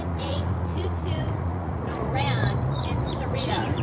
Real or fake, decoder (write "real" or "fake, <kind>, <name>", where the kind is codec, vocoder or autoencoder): fake, vocoder, Vocos